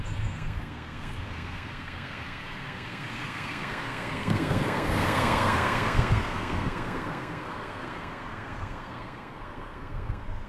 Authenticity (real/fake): fake